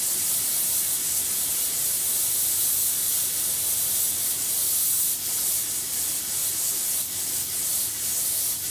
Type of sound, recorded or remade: recorded